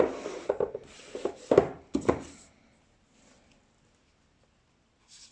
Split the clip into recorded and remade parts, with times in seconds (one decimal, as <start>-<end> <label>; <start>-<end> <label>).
0.0-5.3 recorded

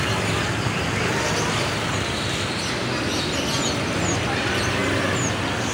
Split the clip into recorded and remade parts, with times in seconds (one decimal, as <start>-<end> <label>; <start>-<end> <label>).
0.0-5.7 recorded

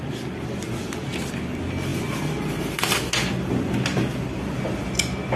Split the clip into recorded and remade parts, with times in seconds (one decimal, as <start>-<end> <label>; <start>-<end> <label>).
0.0-5.4 recorded

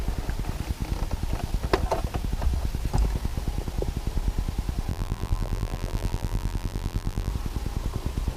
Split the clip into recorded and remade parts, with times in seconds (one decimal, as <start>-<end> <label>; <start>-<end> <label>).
0.0-4.9 recorded; 4.9-7.3 remade; 7.3-8.4 recorded